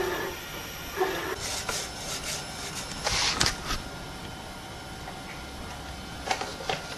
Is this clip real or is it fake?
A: real